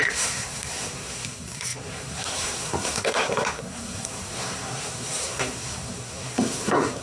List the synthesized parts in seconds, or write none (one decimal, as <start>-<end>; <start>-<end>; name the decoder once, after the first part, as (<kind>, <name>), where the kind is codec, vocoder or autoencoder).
0.0-7.0 (codec, SNAC)